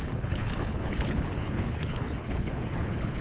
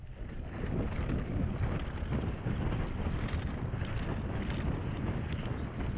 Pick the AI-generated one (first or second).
first